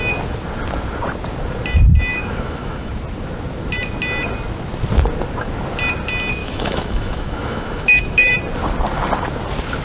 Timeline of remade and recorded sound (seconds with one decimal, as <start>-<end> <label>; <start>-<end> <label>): 0.0-2.1 recorded; 2.1-2.9 remade; 2.9-6.4 recorded; 6.4-8.3 remade; 8.3-9.8 recorded

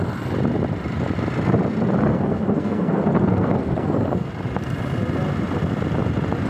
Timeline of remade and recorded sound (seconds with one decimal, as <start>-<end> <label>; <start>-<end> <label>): 0.0-2.1 recorded; 2.1-4.3 remade; 4.3-6.5 recorded

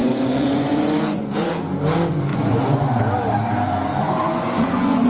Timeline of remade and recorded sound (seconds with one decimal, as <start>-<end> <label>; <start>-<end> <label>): 0.0-1.5 remade; 1.5-2.3 recorded; 2.3-3.0 remade; 3.0-4.0 recorded; 4.0-5.1 remade